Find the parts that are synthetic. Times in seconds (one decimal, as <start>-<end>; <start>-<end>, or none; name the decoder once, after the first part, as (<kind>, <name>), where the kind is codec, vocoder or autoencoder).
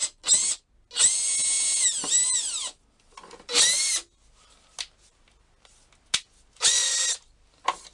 none